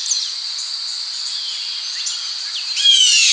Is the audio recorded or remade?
recorded